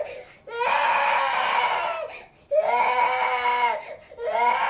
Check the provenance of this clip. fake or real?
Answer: real